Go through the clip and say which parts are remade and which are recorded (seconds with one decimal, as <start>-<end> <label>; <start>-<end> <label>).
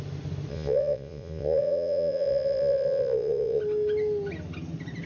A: 0.0-0.5 recorded; 0.5-3.6 remade; 3.6-5.1 recorded